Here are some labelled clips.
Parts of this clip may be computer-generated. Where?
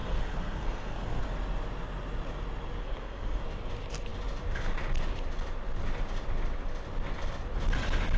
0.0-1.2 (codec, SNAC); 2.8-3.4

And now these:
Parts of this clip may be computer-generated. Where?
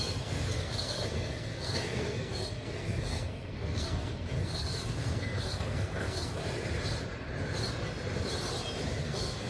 0.0-6.4 (codec, SNAC); 9.0-9.5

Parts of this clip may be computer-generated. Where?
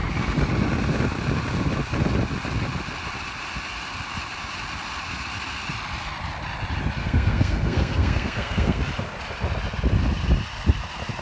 7.0-8.8 (codec, SNAC)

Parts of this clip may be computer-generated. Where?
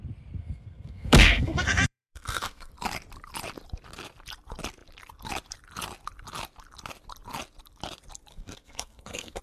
0.4-2.7 (codec, SNAC); 8.3-9.4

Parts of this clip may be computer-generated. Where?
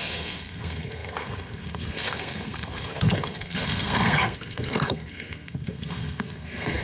0.0-6.8 (codec, SNAC)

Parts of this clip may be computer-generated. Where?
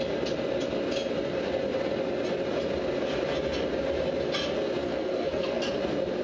4.8-5.6 (codec, SNAC)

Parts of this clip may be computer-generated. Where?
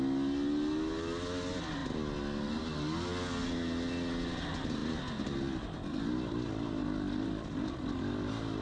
none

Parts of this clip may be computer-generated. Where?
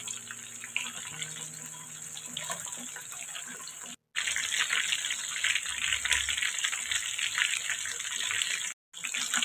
none